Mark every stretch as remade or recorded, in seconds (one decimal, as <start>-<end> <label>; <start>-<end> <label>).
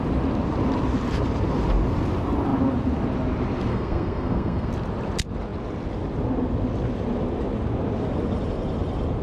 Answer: 0.0-3.7 recorded; 3.7-4.7 remade; 4.7-9.2 recorded